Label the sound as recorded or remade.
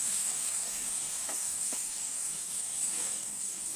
remade